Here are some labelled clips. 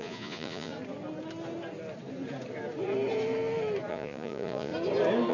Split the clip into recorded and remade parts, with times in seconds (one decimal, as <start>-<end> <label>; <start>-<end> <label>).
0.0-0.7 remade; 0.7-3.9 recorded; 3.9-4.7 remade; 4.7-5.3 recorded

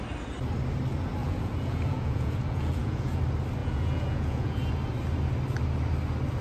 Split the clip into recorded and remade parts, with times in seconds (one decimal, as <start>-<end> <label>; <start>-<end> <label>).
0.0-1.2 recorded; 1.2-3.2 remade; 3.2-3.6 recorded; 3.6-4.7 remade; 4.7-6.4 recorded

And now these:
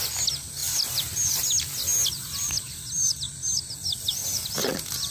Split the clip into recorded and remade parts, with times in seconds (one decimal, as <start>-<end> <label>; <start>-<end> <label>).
0.0-0.6 recorded; 0.6-3.7 remade; 3.7-5.1 recorded

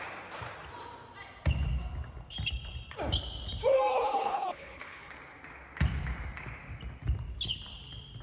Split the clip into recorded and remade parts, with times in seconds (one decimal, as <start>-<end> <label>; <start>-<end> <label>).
0.0-3.9 recorded; 3.9-5.1 remade; 5.1-8.2 recorded

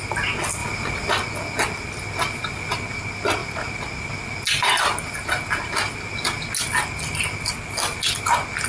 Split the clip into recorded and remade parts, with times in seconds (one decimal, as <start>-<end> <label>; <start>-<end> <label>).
0.0-8.7 recorded

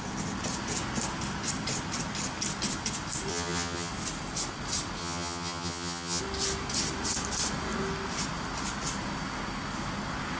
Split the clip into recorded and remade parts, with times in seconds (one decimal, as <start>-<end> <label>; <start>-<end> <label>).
0.0-3.3 recorded; 3.3-3.9 remade; 3.9-5.0 recorded; 5.0-6.2 remade; 6.2-10.4 recorded